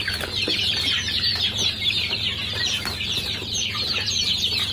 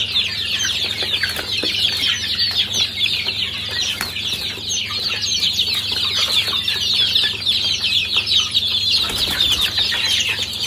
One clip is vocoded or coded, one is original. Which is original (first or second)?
second